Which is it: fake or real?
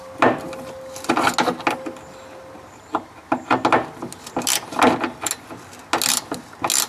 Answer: real